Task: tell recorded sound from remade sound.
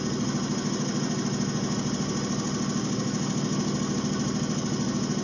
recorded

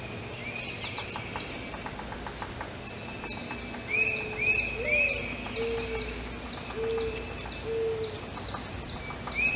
recorded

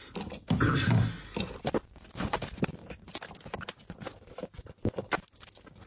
recorded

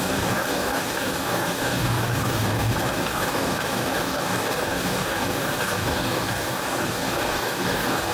remade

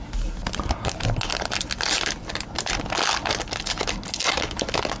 recorded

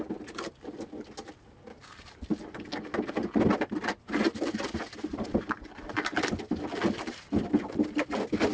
recorded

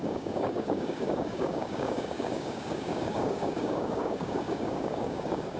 remade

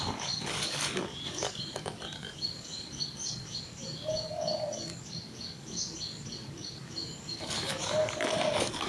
remade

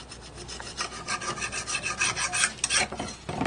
recorded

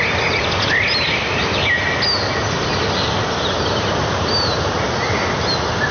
recorded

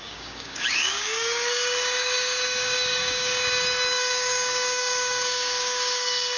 remade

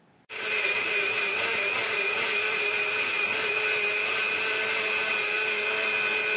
recorded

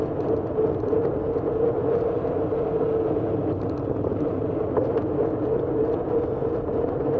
recorded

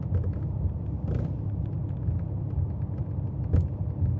recorded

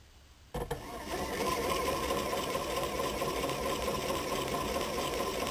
recorded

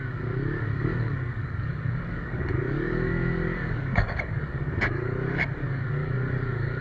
remade